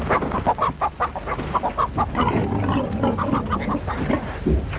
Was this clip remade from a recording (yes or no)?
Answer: no